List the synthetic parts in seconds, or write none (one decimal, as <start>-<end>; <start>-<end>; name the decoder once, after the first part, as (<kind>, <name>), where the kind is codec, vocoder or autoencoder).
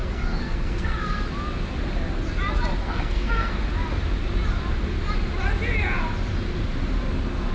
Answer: 0.0-1.2 (codec, SNAC); 2.8-3.6